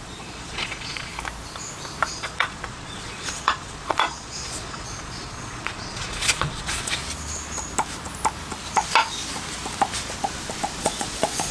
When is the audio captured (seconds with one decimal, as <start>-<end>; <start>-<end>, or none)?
1.1-2.1; 7.0-10.8